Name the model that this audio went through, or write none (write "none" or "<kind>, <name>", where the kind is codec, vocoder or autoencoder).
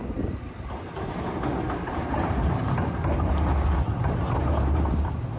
none